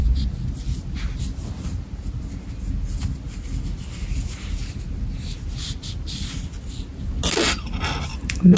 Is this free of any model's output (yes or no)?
yes